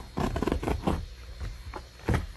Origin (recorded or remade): recorded